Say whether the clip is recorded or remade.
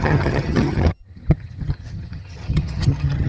remade